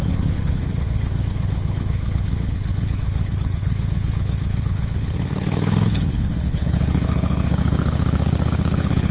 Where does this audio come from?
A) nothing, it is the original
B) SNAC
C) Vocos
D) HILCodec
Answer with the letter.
D